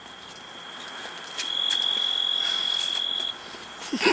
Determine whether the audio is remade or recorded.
recorded